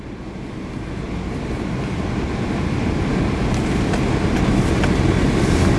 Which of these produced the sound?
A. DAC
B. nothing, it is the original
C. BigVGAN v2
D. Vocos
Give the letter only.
B